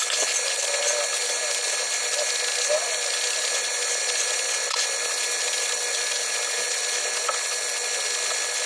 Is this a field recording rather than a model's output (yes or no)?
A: yes